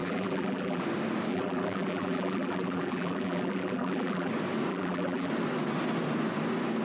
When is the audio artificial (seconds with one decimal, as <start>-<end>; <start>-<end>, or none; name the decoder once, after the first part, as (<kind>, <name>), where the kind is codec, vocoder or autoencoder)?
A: 0.0-0.8 (vocoder, BigVGAN v2); 1.3-4.3; 4.7-5.3